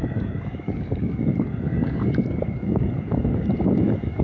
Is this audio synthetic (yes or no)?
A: yes